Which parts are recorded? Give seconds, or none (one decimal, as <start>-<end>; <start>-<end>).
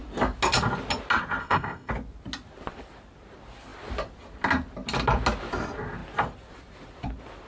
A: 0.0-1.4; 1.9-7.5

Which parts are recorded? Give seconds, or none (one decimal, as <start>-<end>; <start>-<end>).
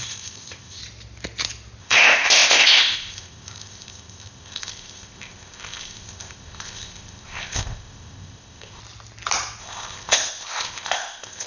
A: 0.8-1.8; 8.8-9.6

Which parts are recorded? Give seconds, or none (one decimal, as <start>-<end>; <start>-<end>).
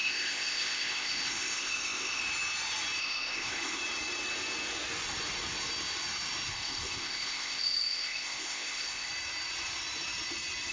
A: 2.2-3.0; 3.8-6.5; 9.1-10.7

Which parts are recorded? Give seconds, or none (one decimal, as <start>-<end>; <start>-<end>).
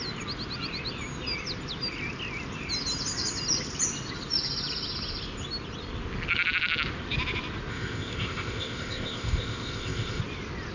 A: 0.0-7.7; 10.2-10.7